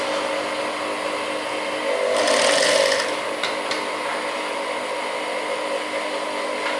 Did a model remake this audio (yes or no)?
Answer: no